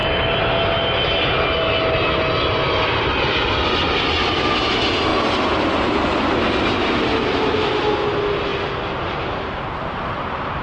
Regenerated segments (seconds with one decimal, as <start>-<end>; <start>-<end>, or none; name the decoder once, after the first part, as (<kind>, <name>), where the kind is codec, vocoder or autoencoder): none